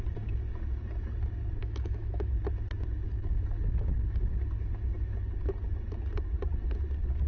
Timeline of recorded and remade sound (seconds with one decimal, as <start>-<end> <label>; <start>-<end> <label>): 0.0-1.6 recorded; 1.6-2.3 remade; 2.3-7.3 recorded